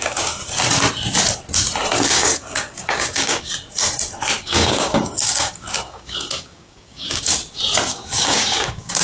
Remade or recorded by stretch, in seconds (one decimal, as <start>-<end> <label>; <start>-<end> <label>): 0.0-0.4 remade; 0.4-2.1 recorded; 2.1-3.5 remade; 3.5-4.4 recorded; 4.4-7.4 remade; 7.4-7.9 recorded; 7.9-9.0 remade